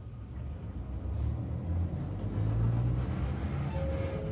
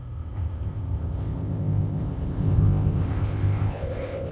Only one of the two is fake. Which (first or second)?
second